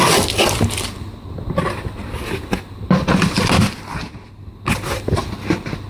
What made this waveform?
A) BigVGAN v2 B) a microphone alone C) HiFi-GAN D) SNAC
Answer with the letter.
B